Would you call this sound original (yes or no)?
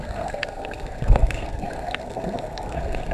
no